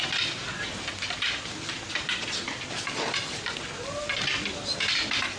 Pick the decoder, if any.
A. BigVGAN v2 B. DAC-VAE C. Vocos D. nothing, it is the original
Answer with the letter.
D